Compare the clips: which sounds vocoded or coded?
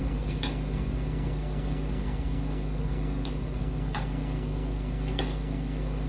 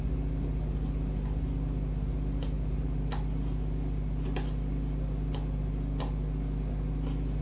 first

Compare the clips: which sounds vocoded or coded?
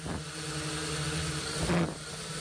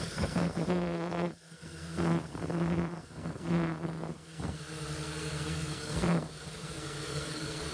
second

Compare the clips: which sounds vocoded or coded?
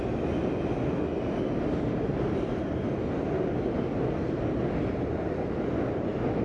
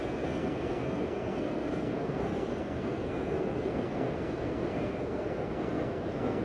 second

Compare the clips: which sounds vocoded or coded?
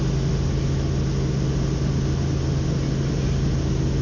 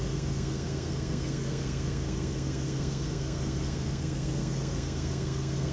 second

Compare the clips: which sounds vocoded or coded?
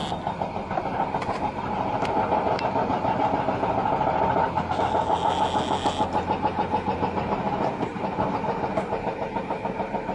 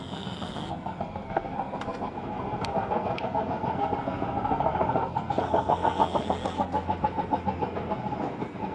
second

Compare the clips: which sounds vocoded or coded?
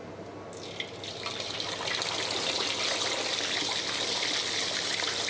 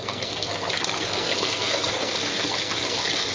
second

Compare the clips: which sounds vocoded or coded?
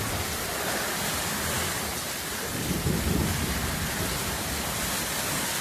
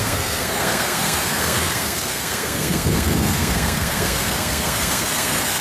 second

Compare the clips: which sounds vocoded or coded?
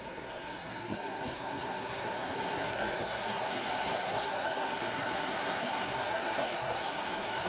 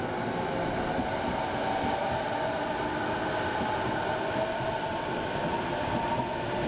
first